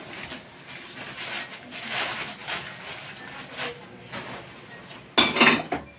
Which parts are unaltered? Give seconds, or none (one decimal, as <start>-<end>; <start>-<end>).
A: 0.0-6.0